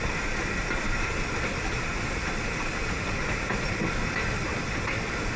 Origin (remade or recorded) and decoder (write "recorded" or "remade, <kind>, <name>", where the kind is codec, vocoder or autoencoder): recorded